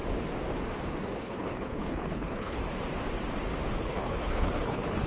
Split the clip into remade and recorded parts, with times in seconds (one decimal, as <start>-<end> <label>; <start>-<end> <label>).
0.0-1.2 recorded; 1.2-2.6 remade; 2.6-3.8 recorded; 3.8-5.1 remade